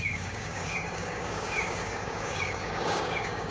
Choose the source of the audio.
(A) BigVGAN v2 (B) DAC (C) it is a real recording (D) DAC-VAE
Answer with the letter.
B